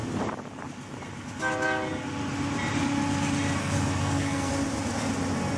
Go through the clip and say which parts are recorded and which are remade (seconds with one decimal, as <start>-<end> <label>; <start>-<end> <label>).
0.0-3.6 recorded; 3.6-4.5 remade; 4.5-5.6 recorded